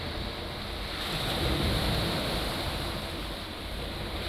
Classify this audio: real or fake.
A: real